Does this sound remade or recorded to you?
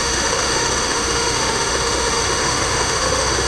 remade